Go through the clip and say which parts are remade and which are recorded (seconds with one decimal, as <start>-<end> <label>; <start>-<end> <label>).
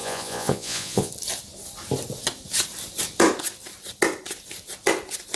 0.0-1.1 remade; 1.1-5.4 recorded